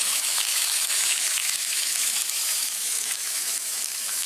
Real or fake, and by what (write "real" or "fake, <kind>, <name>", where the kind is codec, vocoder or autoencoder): fake, autoencoder, DAC-VAE